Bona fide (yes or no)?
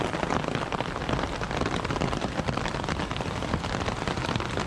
yes